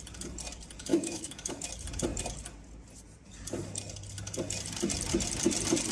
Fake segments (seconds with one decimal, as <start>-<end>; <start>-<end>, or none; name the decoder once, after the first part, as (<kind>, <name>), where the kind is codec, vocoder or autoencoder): 0.9-1.7 (autoencoder, DAC-VAE)